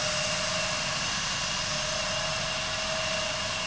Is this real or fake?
real